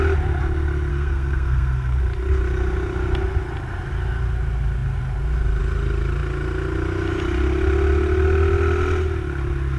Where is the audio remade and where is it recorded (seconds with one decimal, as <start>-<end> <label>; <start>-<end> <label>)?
0.0-0.9 recorded; 0.9-2.0 remade; 2.0-9.8 recorded